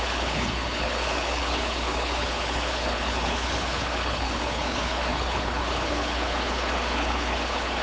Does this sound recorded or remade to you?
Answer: remade